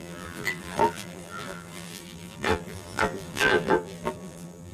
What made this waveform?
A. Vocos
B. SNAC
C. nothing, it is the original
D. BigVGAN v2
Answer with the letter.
D